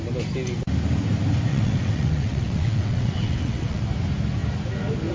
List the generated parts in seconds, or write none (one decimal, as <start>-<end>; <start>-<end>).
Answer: 1.5-3.8